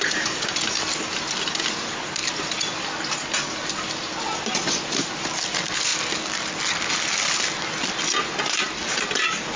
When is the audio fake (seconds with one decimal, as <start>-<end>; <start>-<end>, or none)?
none